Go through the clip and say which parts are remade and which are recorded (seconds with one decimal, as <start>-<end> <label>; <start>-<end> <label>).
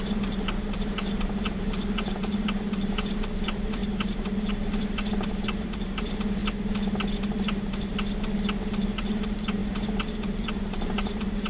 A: 0.0-6.4 remade; 6.4-7.2 recorded; 7.2-7.9 remade; 7.9-9.0 recorded; 9.0-11.5 remade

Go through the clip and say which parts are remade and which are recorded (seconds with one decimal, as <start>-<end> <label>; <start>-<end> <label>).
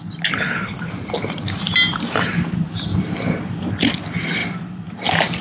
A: 0.0-1.9 recorded; 1.9-3.8 remade; 3.8-4.4 recorded; 4.4-5.4 remade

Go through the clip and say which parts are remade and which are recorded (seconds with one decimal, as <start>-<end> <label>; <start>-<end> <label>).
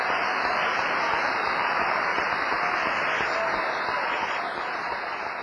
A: 0.0-2.1 remade; 2.1-5.4 recorded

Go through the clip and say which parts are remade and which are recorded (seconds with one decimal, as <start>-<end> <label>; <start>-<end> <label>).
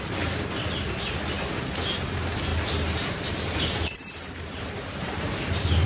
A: 0.0-2.5 recorded; 2.5-5.4 remade; 5.4-5.9 recorded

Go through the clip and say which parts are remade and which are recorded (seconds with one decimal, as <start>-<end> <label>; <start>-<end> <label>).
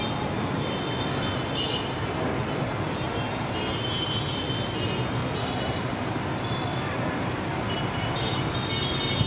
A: 0.0-5.2 recorded; 5.2-5.8 remade; 5.8-6.7 recorded; 6.7-8.5 remade; 8.5-9.3 recorded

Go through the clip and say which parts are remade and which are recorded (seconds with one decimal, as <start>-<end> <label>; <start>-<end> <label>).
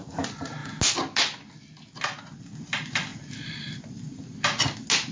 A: 0.0-5.1 recorded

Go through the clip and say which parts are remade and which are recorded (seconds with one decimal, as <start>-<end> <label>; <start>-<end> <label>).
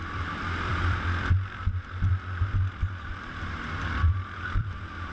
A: 0.0-5.1 remade